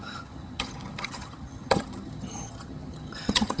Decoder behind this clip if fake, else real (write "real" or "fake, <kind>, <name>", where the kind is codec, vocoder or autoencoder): fake, vocoder, HiFi-GAN